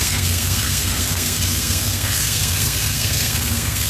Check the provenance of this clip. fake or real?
fake